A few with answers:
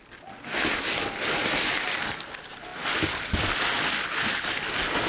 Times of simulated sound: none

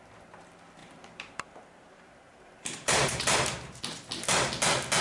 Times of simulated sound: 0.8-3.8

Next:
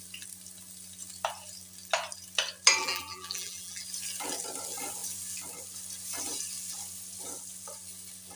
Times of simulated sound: 2.8-3.8